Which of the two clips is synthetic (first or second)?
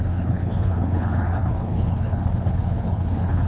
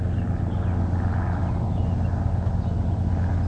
first